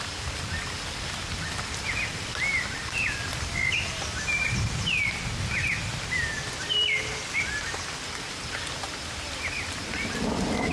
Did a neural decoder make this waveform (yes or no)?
yes